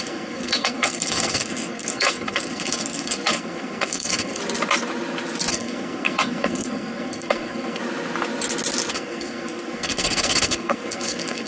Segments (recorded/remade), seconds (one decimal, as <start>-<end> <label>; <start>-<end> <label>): 0.0-4.4 remade; 4.4-5.5 recorded; 5.5-7.8 remade; 7.8-8.9 recorded; 8.9-11.5 remade